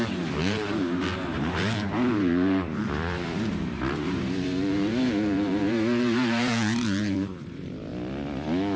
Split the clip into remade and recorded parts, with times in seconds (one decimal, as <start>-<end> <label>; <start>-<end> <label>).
0.0-7.9 remade; 7.9-8.8 recorded